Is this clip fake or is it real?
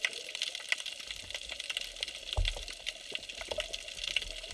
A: real